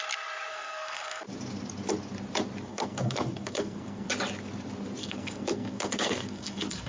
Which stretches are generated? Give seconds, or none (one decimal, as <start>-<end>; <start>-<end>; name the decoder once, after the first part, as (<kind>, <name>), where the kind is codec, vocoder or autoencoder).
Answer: 0.5-1.2 (codec, SNAC); 2.7-4.1; 5.0-6.9